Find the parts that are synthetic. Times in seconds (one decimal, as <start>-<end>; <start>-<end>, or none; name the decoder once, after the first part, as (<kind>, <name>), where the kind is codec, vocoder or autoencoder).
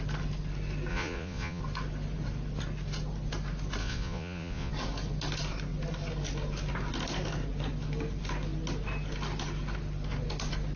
0.9-1.6 (vocoder, Vocos); 3.8-4.7